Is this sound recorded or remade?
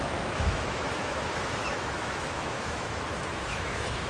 remade